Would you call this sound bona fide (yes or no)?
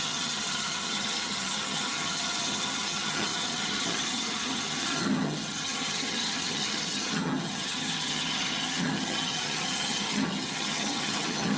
no